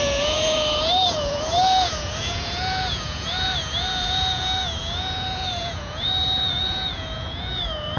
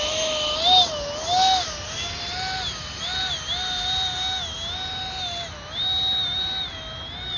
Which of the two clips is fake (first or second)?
first